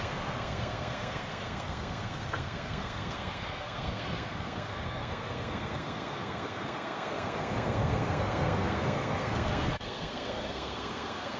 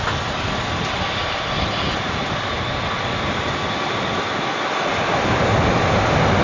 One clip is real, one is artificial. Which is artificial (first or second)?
first